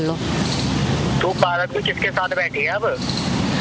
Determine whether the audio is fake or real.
real